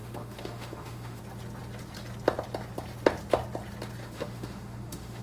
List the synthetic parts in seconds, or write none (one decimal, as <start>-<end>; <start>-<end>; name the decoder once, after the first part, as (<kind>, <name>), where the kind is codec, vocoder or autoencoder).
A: 0.0-1.2 (autoencoder, DAC-VAE); 4.0-5.2